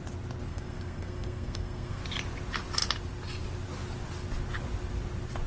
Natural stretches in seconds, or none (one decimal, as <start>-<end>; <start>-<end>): 0.0-0.5; 2.0-5.5